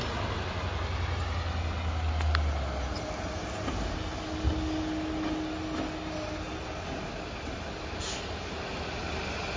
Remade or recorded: recorded